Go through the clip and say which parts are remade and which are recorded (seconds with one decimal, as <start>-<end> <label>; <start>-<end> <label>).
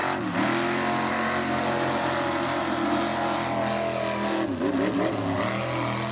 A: 0.0-6.1 recorded